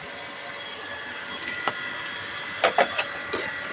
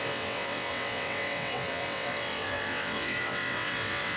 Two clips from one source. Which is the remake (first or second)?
second